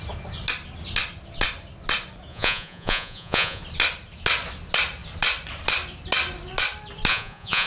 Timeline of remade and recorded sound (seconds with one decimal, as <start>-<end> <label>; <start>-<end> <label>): 0.0-2.3 recorded; 2.3-3.6 remade; 3.6-7.1 recorded; 7.1-7.7 remade